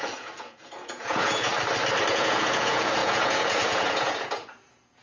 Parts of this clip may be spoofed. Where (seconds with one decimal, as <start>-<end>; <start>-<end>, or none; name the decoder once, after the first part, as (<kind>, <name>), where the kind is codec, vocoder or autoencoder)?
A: 0.0-1.5 (vocoder, Vocos); 2.1-5.0